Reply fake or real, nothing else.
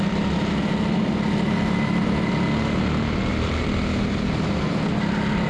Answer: real